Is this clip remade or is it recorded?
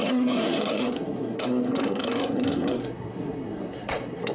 remade